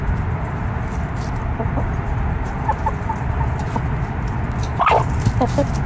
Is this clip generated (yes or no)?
no